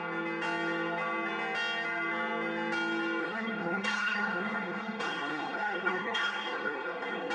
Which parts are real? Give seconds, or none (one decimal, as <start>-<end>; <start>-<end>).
0.0-3.2